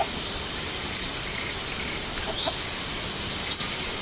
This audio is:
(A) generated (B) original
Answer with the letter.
B